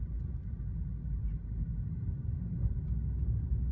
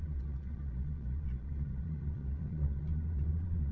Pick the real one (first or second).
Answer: first